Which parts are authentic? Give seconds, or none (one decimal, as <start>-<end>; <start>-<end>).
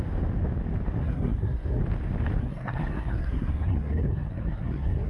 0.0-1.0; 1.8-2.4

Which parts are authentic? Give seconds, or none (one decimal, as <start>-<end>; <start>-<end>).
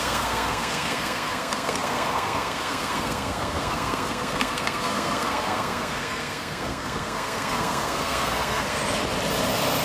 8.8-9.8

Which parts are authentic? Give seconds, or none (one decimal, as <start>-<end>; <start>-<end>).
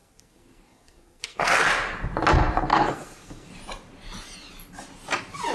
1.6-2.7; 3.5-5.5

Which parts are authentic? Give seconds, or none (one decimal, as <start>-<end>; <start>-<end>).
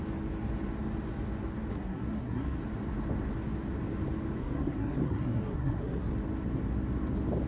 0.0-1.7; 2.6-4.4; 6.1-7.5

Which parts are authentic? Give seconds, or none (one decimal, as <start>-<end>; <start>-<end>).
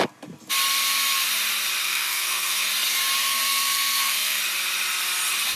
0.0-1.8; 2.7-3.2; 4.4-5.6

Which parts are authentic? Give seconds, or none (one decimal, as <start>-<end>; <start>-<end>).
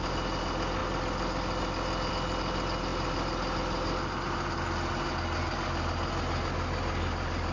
0.0-7.5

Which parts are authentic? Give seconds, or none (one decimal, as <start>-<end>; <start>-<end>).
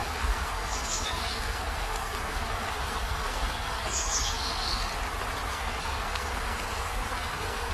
4.9-5.5